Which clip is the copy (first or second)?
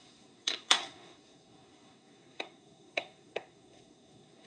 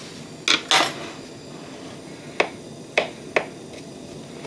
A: first